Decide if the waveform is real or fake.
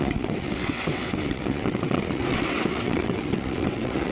fake